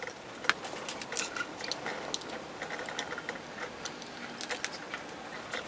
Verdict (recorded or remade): recorded